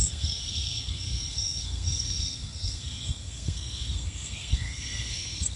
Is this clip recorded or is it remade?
remade